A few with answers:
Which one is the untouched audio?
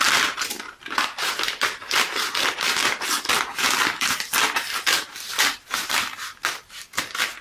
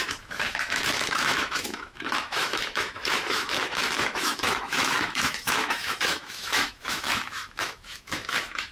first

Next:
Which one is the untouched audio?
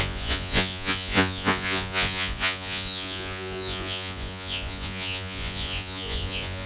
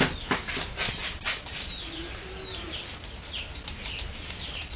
second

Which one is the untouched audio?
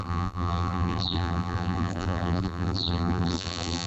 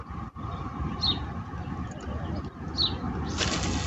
second